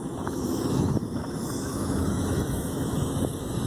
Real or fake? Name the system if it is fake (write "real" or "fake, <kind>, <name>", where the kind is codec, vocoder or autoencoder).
fake, autoencoder, DAC-VAE